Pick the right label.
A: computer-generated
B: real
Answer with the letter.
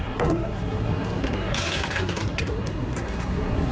A